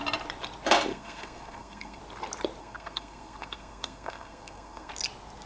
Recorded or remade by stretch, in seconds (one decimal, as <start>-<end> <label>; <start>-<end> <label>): 0.0-0.9 recorded; 0.9-2.0 remade; 2.0-2.6 recorded; 2.6-4.9 remade; 4.9-5.5 recorded